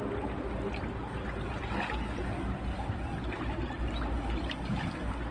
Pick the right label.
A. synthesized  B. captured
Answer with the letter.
B